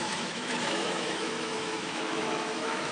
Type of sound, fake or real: fake